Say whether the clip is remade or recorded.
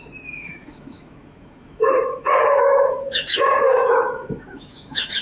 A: remade